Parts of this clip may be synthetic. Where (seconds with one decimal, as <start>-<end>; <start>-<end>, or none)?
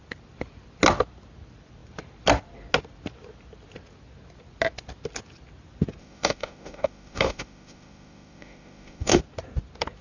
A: 6.0-9.2